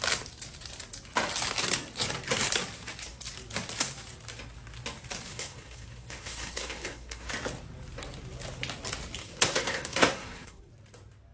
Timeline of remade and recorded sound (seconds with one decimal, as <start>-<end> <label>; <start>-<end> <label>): 0.0-5.3 recorded; 5.3-7.3 remade; 7.3-9.2 recorded; 9.2-10.7 remade; 10.7-11.3 recorded